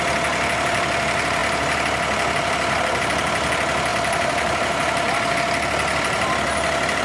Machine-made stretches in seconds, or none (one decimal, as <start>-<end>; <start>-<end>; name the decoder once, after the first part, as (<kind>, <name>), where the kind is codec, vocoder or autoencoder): 3.9-5.3 (vocoder, BigVGAN v2)